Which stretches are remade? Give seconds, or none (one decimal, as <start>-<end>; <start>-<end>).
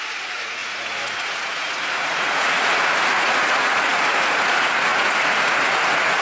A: 0.0-6.2